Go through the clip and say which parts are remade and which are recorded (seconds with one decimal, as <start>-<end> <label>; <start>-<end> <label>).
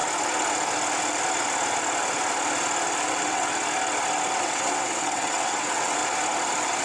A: 0.0-3.1 recorded; 3.1-3.5 remade; 3.5-4.4 recorded; 4.4-6.0 remade; 6.0-6.8 recorded